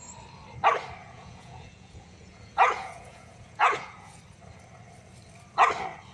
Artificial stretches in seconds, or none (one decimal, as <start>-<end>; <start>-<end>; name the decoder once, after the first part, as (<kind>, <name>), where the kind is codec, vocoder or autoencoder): 1.0-4.2 (vocoder, Vocos)